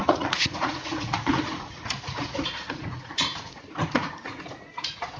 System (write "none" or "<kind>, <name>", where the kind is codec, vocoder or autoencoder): vocoder, Vocos